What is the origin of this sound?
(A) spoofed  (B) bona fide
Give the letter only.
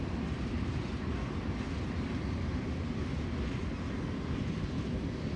B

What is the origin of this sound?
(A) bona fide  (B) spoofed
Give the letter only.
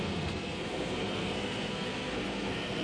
B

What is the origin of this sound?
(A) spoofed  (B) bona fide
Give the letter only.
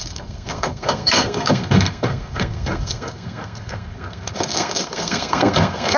A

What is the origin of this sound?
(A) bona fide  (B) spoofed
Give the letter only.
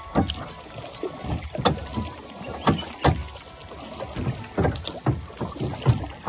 A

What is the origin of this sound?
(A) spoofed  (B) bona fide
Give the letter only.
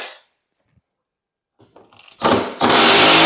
B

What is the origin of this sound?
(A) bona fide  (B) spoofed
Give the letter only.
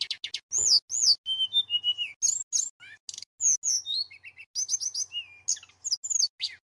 A